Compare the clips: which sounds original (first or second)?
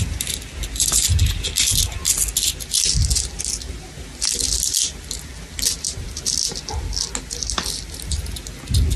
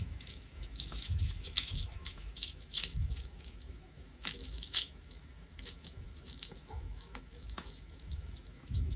first